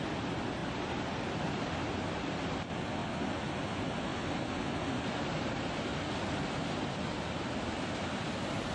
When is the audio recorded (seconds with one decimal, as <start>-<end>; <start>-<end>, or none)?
0.0-8.7